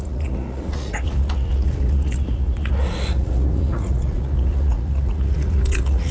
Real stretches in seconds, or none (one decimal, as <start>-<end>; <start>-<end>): none